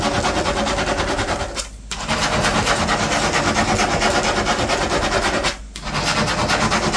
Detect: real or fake real